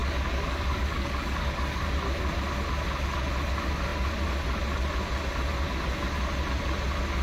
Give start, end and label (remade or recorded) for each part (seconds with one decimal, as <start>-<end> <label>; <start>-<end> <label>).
0.0-1.8 remade; 1.8-7.2 recorded